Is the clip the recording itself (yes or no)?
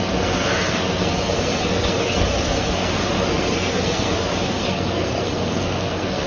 no